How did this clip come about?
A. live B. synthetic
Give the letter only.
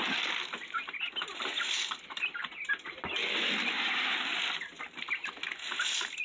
A